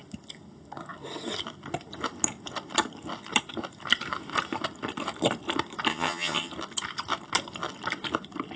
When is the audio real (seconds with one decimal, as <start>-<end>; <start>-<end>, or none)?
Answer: 0.0-5.9; 6.5-8.6